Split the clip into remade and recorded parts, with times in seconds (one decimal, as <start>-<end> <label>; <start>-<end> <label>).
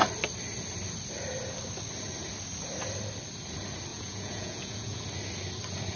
0.0-3.9 recorded; 3.9-5.0 remade; 5.0-6.0 recorded